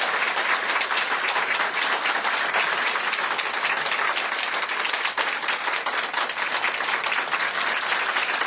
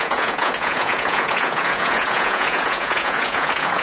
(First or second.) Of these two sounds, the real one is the first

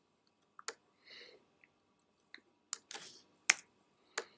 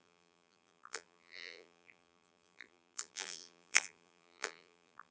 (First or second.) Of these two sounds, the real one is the first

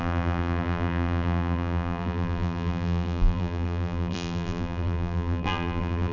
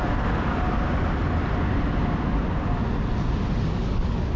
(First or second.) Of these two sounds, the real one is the second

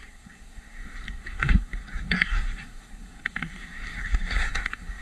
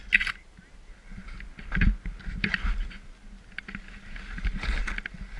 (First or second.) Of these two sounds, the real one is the second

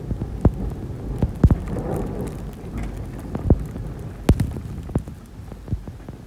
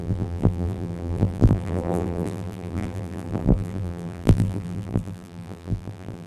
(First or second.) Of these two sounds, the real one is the first